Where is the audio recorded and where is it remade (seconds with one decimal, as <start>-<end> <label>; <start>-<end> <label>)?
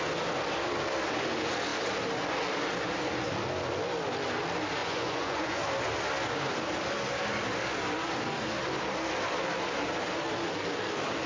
0.0-4.8 recorded; 4.8-5.6 remade; 5.6-11.3 recorded